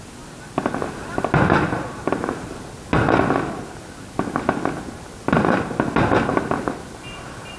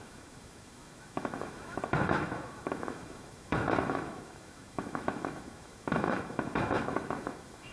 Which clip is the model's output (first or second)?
second